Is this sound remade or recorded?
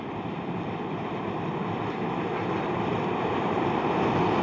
recorded